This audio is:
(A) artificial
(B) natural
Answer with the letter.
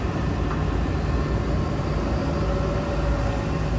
B